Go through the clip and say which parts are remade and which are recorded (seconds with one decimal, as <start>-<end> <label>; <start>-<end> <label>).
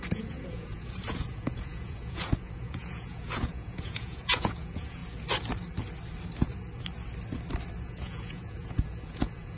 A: 0.0-5.0 remade; 5.0-7.8 recorded; 7.8-9.6 remade